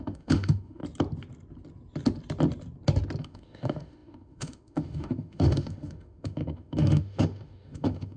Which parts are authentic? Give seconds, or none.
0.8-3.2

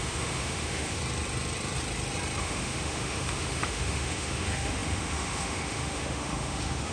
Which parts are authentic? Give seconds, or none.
1.0-2.4

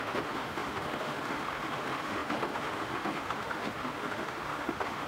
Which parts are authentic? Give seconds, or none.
none